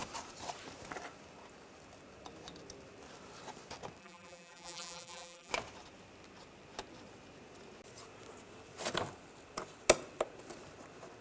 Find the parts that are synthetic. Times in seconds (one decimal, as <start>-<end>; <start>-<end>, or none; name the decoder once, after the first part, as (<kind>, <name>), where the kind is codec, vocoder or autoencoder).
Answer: 4.0-5.5 (vocoder, BigVGAN v2)